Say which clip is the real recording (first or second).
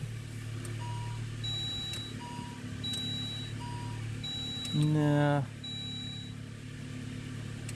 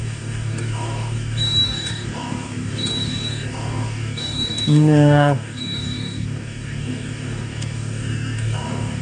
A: first